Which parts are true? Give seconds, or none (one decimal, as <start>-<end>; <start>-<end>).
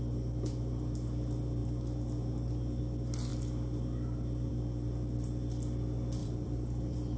0.0-6.2